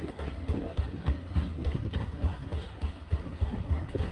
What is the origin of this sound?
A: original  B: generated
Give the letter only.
B